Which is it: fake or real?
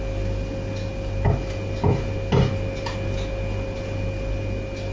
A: real